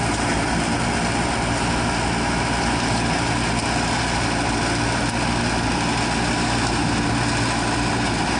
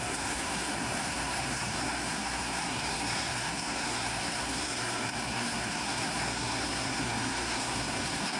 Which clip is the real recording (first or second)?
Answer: first